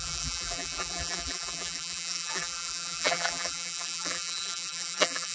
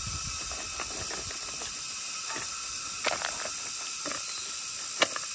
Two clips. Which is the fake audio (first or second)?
first